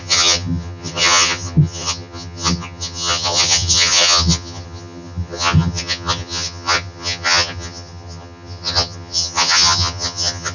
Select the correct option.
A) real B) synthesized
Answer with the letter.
B